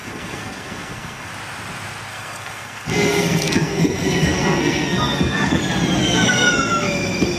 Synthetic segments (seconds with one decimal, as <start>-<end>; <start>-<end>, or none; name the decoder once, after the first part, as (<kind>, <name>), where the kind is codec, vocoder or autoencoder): 0.0-1.3 (codec, SNAC); 2.1-5.6; 6.0-6.7